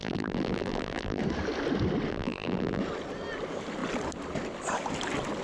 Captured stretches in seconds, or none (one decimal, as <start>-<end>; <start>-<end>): 1.2-2.1; 2.8-5.4